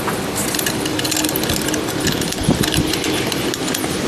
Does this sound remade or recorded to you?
recorded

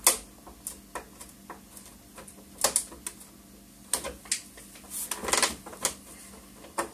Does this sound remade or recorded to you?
recorded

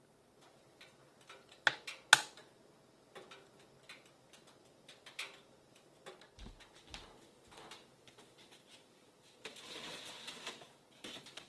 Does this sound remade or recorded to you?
recorded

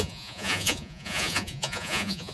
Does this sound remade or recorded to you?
remade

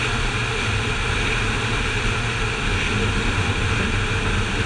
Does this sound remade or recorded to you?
recorded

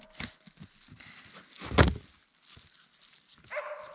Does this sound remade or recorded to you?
recorded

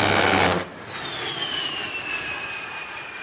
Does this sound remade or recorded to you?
recorded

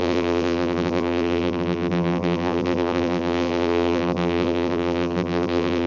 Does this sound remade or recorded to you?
remade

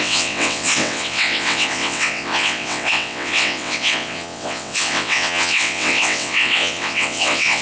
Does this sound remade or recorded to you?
remade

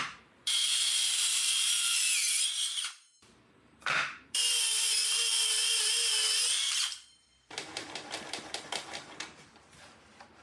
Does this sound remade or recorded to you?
remade